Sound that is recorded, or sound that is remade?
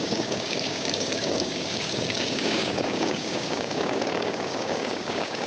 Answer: remade